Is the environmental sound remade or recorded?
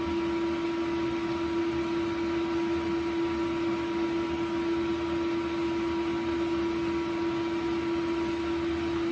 recorded